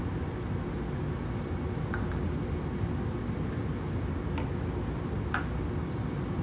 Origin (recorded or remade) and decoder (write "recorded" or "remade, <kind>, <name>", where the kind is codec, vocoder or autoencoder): recorded